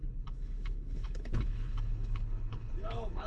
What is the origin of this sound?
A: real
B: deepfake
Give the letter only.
B